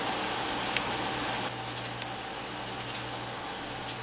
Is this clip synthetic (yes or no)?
no